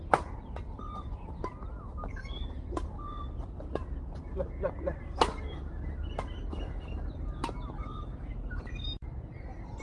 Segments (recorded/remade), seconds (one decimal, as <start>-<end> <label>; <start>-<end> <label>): 0.0-8.1 recorded; 8.1-9.2 remade; 9.2-9.8 recorded